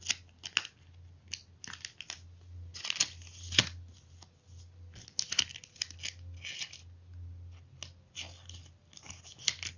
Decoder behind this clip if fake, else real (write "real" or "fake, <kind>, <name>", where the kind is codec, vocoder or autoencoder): real